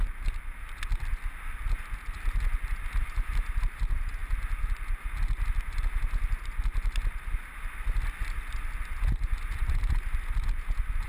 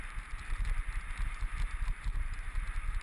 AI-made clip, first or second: second